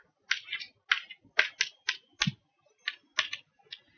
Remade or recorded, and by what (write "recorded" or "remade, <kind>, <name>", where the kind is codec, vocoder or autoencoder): recorded